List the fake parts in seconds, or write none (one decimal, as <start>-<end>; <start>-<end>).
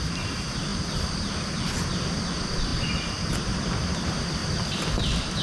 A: none